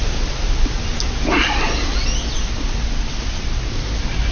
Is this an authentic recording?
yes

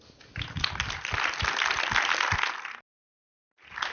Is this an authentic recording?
yes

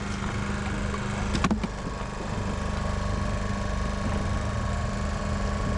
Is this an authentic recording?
yes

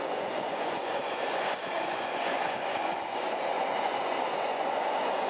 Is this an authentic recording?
no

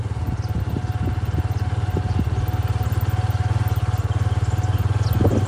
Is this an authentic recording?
yes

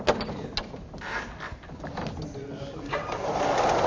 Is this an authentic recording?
yes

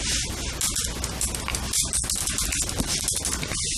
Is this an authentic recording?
yes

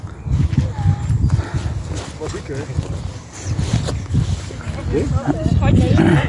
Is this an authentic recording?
yes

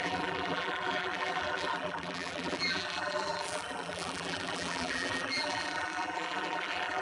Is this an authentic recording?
no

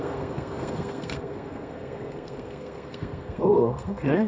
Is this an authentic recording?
no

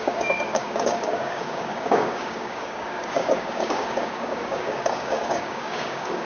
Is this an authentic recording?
no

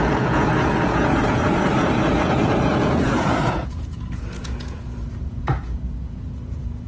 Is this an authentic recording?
no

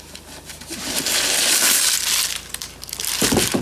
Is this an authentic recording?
yes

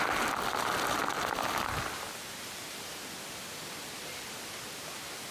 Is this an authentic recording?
yes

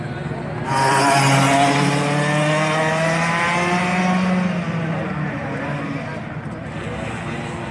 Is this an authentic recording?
yes